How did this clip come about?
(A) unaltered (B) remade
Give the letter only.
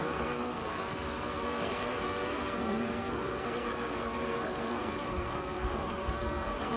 B